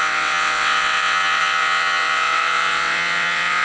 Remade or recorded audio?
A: remade